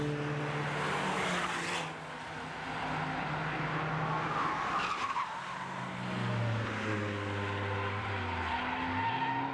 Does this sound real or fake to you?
real